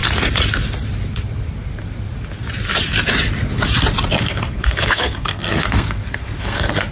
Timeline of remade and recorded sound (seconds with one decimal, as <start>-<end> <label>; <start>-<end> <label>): 0.0-4.1 recorded; 4.1-6.9 remade